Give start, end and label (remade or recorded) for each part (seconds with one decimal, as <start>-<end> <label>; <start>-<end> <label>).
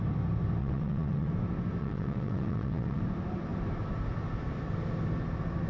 0.0-0.6 recorded; 0.6-1.3 remade; 1.3-1.8 recorded; 1.8-3.0 remade; 3.0-5.7 recorded